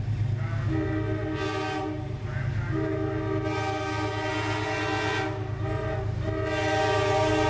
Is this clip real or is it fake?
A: real